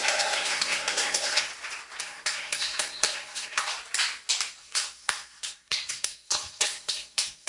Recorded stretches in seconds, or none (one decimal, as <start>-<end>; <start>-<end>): 1.5-2.0; 3.7-4.6